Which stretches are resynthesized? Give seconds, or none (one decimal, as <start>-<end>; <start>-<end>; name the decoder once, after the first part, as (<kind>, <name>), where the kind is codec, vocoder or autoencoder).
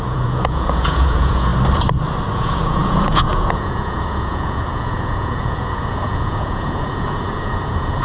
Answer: 0.0-1.5 (vocoder, Vocos); 2.3-8.0